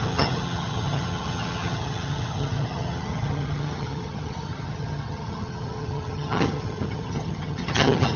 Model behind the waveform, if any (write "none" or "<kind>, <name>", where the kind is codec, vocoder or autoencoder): vocoder, HiFi-GAN